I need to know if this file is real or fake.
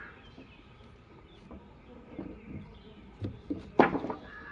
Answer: real